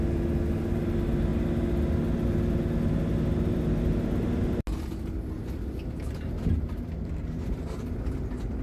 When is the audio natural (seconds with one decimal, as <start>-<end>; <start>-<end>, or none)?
0.0-8.6